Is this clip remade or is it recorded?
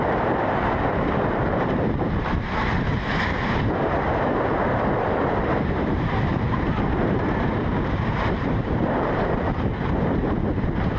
remade